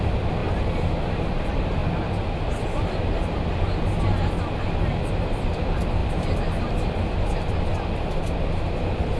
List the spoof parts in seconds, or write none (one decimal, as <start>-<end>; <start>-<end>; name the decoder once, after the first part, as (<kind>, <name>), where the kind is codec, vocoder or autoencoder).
0.0-0.4 (vocoder, BigVGAN v2); 1.3-1.8; 5.1-9.2